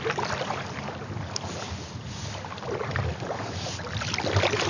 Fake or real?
real